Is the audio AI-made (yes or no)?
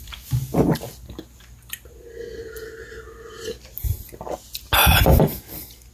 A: no